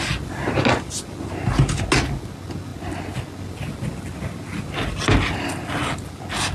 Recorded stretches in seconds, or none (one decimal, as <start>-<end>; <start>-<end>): 0.0-6.5